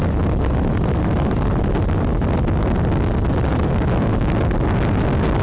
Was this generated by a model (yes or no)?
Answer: no